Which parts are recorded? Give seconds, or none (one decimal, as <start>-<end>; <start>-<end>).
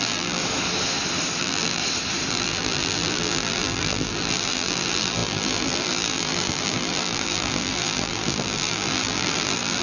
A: 0.4-1.4; 1.8-2.3